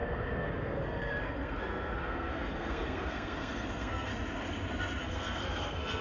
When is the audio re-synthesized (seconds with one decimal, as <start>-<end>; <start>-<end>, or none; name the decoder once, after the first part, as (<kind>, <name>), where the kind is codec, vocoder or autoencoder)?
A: 0.0-4.1 (codec, SNAC); 5.0-6.0